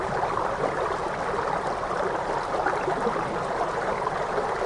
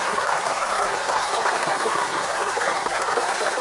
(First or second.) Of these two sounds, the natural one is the first